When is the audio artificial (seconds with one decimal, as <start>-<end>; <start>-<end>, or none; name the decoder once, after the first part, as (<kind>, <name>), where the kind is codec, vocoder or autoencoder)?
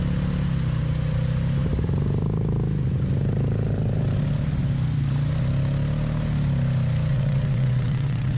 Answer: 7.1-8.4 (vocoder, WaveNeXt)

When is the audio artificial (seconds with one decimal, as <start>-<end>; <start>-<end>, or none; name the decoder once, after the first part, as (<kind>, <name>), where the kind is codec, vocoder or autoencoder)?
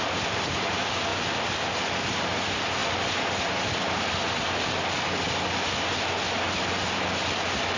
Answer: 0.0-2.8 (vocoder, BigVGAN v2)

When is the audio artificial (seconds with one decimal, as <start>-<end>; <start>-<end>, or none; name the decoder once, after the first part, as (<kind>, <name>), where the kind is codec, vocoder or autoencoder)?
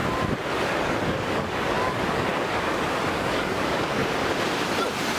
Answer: 0.5-4.0 (codec, DAC)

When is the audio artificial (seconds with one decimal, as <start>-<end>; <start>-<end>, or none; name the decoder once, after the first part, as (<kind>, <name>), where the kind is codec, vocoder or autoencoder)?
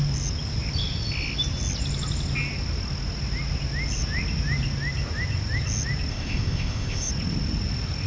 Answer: 6.1-7.1 (codec, ZipCodec)